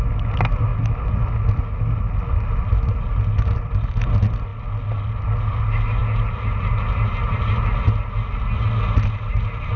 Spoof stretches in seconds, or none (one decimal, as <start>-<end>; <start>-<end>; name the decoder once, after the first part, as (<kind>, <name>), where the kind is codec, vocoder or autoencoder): none